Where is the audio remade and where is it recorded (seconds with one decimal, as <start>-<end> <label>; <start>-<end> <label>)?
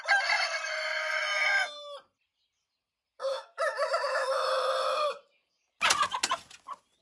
0.0-3.3 recorded; 3.3-4.5 remade; 4.5-7.0 recorded